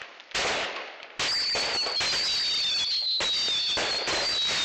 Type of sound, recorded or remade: recorded